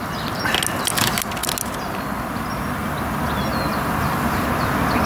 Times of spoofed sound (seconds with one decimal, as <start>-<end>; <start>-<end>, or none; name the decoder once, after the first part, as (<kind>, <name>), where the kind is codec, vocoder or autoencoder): none